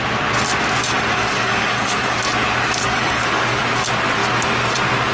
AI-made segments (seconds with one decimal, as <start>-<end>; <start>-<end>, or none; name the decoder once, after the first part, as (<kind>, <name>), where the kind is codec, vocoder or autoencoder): 0.8-2.2 (codec, DAC); 2.8-3.6